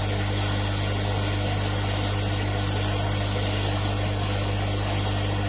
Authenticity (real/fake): real